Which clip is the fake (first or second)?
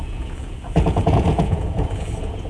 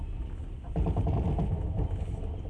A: first